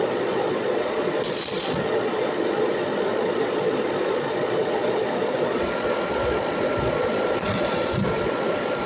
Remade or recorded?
remade